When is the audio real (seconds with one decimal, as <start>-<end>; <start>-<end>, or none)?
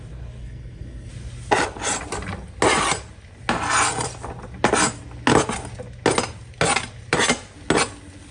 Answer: 0.0-0.4; 1.1-8.3